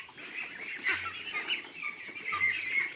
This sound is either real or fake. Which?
real